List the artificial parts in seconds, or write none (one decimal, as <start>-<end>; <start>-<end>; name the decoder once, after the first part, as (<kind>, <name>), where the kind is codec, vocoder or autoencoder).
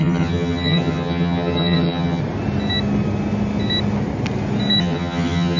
0.0-2.2 (vocoder, HiFi-GAN); 4.8-5.6